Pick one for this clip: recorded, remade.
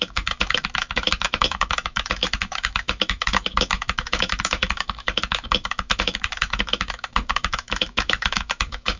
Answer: remade